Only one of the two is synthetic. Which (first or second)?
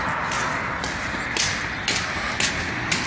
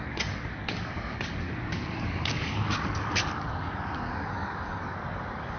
second